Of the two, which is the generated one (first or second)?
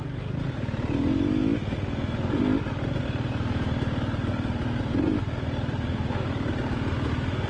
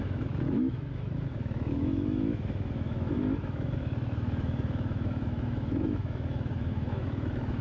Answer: second